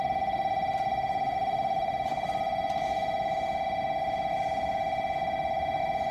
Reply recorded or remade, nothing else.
recorded